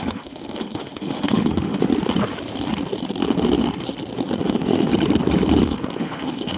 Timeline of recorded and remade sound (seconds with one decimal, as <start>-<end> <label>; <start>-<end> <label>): 0.0-1.9 remade; 1.9-4.4 recorded; 4.4-4.9 remade; 4.9-5.6 recorded; 5.6-6.6 remade